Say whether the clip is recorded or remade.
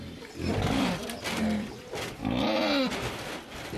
recorded